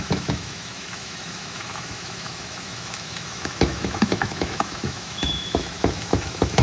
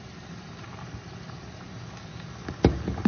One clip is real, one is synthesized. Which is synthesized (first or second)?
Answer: first